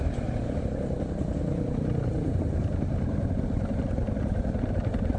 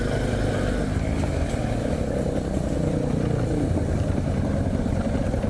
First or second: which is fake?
first